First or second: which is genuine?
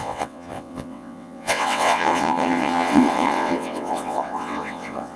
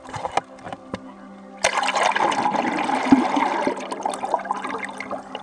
second